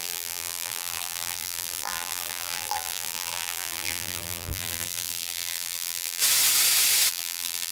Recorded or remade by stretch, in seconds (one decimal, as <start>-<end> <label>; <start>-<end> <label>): 0.0-6.2 remade; 6.2-7.1 recorded; 7.1-7.7 remade